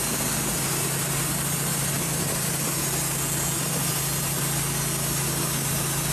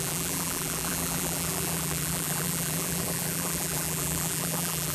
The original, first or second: first